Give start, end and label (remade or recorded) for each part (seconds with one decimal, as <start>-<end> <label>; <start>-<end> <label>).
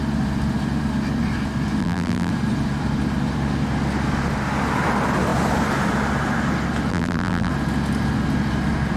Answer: 0.0-1.8 recorded; 1.8-2.3 remade; 2.3-6.9 recorded; 6.9-7.5 remade; 7.5-9.0 recorded